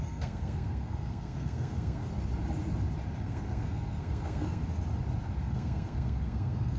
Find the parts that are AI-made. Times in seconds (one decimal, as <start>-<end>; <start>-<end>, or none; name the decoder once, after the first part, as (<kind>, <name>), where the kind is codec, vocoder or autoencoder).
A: 0.0-2.0 (codec, SNAC); 3.2-4.6; 5.4-6.8